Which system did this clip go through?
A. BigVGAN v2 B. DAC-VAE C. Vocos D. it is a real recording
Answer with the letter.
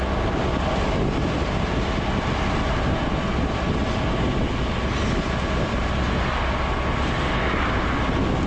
D